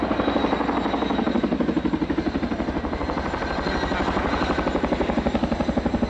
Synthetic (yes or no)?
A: no